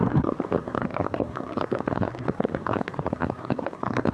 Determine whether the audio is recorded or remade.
remade